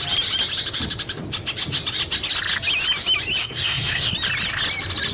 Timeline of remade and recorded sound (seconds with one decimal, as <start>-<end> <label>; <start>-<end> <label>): 0.0-3.4 recorded; 3.4-4.1 remade; 4.1-5.1 recorded